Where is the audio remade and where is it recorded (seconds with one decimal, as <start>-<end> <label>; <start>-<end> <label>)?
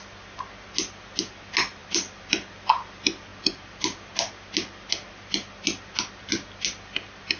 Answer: 0.0-1.8 recorded; 1.8-2.5 remade; 2.5-7.4 recorded